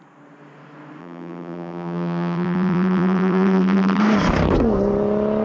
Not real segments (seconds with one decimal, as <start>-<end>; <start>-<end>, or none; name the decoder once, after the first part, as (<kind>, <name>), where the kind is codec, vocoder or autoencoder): 1.0-4.0 (vocoder, BigVGAN v2)